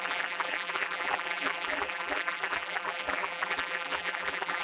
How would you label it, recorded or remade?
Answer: remade